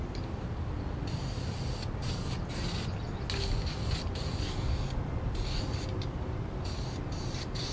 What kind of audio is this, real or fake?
real